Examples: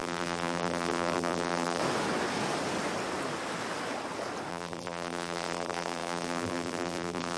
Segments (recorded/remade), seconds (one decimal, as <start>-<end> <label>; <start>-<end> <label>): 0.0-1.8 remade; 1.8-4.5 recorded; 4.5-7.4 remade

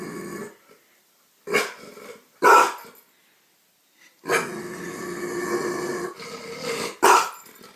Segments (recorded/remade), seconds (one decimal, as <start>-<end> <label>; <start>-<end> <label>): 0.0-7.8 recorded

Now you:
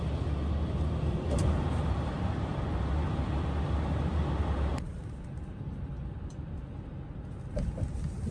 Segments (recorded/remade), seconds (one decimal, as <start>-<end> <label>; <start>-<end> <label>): 0.0-4.7 recorded; 4.7-5.9 remade; 5.9-8.3 recorded